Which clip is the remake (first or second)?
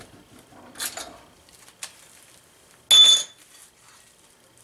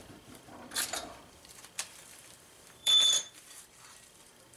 second